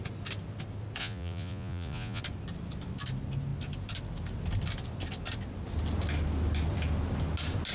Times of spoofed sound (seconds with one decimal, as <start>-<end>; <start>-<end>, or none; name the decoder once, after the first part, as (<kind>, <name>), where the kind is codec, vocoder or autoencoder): 1.0-2.2 (vocoder, Vocos)